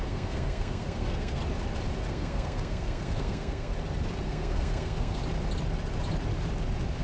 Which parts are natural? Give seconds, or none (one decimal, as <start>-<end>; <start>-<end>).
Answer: 1.4-2.1; 3.7-4.2; 5.2-7.0